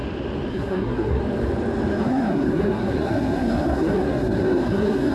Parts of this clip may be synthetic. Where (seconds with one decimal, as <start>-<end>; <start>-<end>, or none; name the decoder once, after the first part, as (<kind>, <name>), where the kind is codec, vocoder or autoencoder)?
0.5-1.2 (codec, SNAC); 2.0-5.1